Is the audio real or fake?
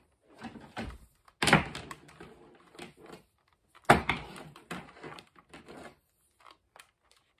real